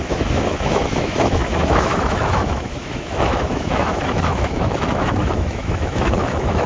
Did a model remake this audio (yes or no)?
yes